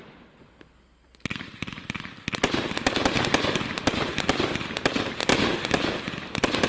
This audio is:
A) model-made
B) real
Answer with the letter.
B